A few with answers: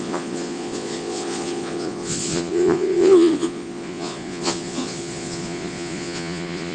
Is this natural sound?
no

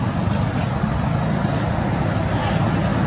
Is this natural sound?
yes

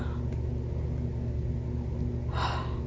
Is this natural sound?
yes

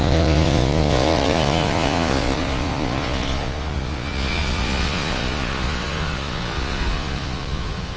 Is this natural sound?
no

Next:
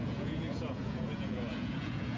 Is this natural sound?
no